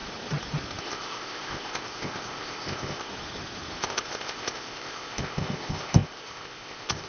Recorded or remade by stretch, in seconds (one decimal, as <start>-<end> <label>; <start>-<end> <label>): 0.0-0.8 recorded; 0.8-3.1 remade; 3.1-3.8 recorded; 3.8-7.1 remade